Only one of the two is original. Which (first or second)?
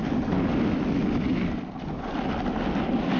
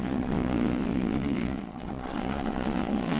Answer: first